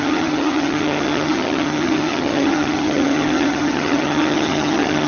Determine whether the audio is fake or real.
fake